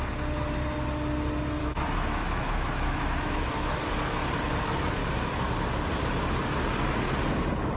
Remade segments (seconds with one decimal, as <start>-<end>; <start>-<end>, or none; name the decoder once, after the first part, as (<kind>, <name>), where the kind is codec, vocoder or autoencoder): 1.6-3.9 (autoencoder, DAC-VAE)

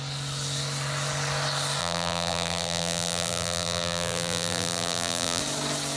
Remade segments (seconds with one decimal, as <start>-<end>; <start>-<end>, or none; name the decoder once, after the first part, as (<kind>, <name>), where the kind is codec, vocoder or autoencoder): 1.8-5.4 (vocoder, BigVGAN v2)

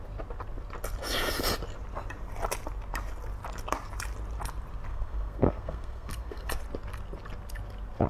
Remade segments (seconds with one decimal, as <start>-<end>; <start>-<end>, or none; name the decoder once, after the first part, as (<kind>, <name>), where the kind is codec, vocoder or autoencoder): 4.9-6.5 (codec, SNAC)

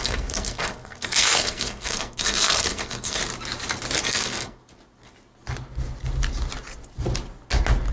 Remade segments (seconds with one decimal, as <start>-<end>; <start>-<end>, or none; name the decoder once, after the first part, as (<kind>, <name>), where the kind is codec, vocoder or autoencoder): 0.0-3.2 (codec, SNAC); 4.0-4.6

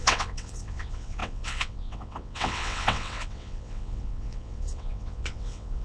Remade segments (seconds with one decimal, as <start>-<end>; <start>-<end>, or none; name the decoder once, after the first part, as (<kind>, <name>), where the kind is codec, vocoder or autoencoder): 0.0-5.8 (vocoder, WaveNeXt)

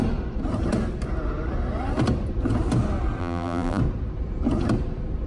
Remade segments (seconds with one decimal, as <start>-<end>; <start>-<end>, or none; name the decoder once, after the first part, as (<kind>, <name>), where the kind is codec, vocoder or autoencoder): 3.2-3.8 (vocoder, BigVGAN v2)